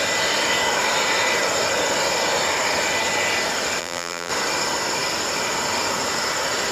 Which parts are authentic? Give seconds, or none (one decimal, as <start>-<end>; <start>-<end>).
0.0-3.8; 4.3-6.7